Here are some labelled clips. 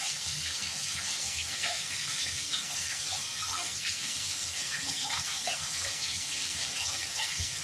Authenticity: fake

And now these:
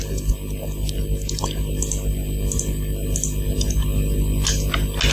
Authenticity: real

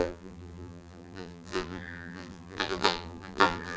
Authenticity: fake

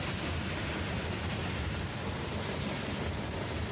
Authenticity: real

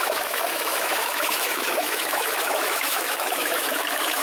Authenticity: fake